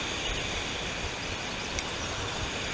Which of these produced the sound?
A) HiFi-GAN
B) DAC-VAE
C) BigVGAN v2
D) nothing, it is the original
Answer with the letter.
D